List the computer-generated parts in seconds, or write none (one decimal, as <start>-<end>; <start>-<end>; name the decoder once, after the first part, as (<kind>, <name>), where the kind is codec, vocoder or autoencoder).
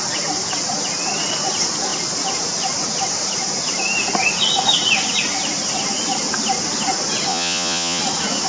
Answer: 7.3-8.0 (vocoder, Vocos)